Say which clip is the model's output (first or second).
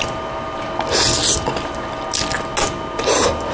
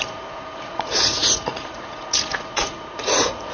second